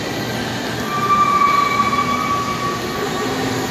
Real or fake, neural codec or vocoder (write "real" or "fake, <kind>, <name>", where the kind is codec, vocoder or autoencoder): real